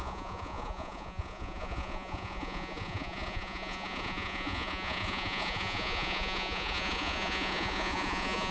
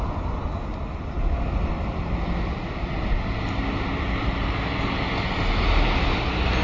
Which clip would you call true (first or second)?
second